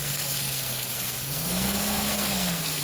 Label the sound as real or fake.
fake